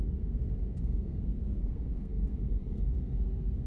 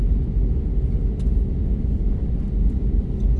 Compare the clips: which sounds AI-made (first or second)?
first